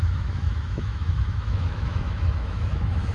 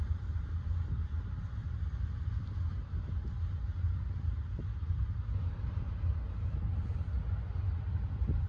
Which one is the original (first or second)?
second